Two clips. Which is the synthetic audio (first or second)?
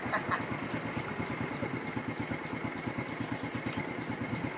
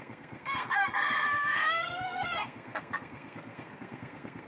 second